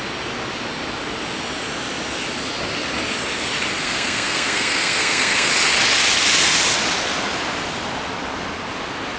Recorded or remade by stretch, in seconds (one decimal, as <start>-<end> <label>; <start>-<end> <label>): 0.0-3.8 recorded; 3.8-5.5 remade; 5.5-9.2 recorded